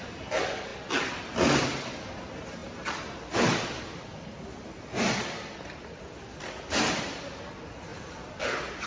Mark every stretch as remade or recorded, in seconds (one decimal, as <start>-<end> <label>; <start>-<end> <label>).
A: 0.0-8.9 recorded